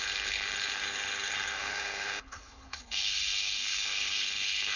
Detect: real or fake fake